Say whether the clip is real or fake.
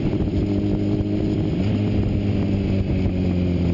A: real